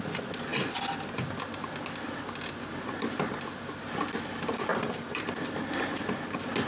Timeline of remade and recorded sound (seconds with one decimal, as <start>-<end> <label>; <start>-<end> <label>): 0.0-4.7 recorded; 4.7-5.3 remade; 5.3-6.7 recorded